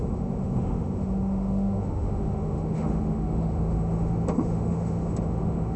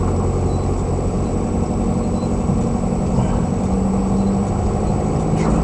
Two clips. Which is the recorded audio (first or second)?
second